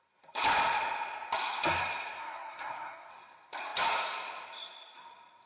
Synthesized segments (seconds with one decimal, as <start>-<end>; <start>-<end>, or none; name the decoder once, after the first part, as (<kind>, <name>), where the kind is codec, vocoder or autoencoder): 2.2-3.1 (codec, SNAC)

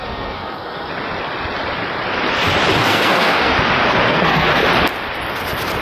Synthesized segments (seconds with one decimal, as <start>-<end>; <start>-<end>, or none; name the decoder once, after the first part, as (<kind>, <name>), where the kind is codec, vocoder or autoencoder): 0.0-0.9 (codec, SNAC); 2.8-3.5; 4.1-4.6

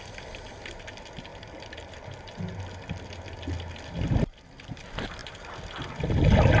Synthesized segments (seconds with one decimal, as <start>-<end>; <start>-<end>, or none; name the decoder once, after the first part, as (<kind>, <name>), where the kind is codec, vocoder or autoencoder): none